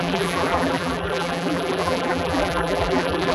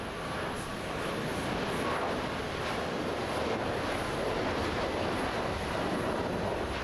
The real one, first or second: second